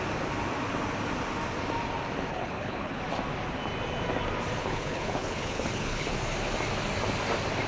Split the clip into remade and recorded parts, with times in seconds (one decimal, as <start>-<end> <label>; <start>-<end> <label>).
0.0-2.3 recorded; 2.3-3.0 remade; 3.0-4.6 recorded; 4.6-6.1 remade; 6.1-7.7 recorded